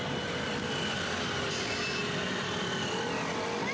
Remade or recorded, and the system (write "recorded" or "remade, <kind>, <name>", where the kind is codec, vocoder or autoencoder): recorded